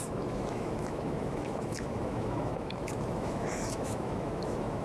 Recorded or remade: remade